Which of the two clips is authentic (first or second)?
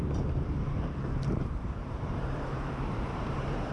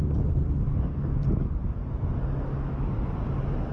second